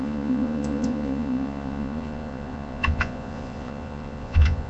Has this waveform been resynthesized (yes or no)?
yes